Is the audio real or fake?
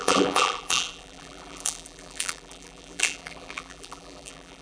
fake